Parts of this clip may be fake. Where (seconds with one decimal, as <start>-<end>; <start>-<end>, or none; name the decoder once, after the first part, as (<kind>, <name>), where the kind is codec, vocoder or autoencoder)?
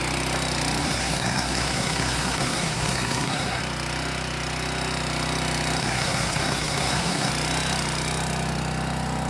0.8-3.6 (codec, SNAC); 5.8-7.3